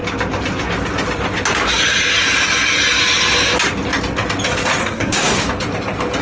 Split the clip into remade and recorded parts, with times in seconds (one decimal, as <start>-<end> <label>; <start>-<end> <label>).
0.0-4.8 recorded; 4.8-5.4 remade; 5.4-6.2 recorded